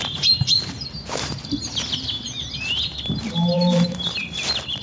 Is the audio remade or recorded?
remade